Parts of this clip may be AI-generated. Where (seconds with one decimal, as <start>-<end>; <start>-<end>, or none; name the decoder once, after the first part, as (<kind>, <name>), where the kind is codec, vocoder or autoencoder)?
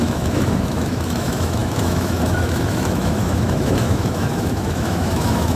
0.0-5.6 (autoencoder, DAC-VAE)